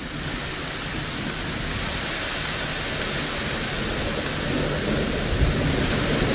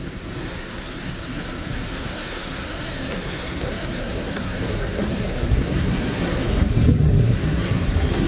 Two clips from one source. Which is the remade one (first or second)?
second